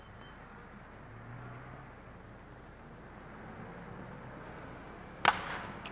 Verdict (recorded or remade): recorded